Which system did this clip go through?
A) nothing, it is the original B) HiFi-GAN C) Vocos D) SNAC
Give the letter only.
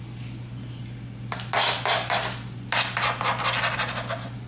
A